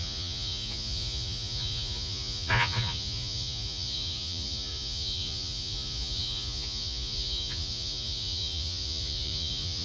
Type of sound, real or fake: fake